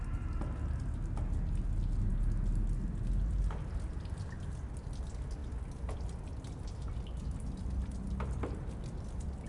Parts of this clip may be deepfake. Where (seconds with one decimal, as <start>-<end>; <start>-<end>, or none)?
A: none